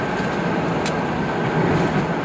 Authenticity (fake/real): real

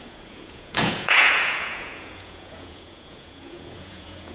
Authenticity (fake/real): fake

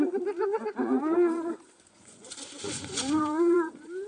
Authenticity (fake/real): fake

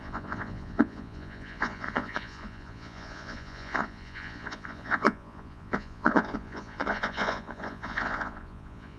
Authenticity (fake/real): fake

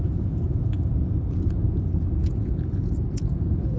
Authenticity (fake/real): fake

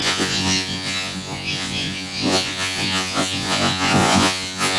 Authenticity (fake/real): fake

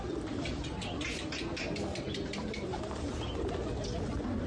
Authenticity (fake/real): real